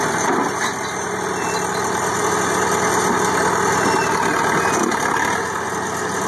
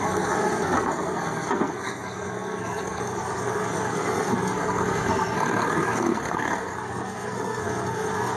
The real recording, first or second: first